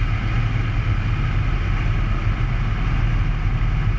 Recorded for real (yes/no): yes